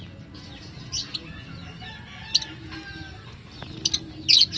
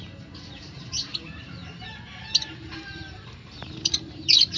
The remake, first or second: second